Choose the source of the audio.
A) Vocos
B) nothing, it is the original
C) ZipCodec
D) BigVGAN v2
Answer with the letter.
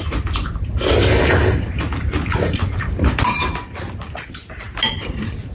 D